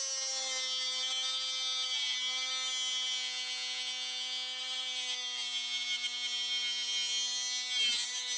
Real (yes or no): yes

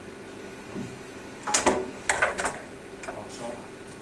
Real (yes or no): yes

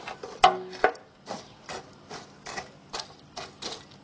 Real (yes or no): yes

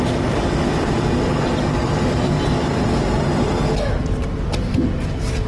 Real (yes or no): yes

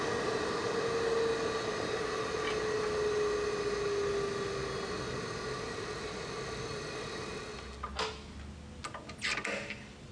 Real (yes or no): yes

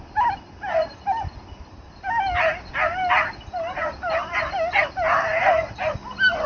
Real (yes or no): yes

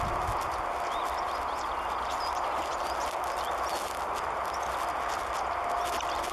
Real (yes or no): yes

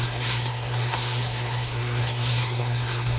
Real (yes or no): no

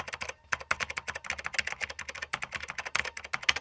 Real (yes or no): yes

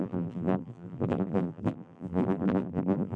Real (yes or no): no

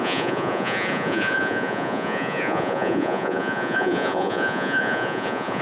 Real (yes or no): no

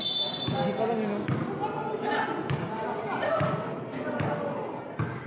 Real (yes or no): yes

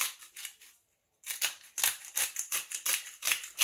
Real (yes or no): no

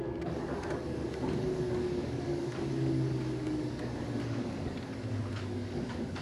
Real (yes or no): no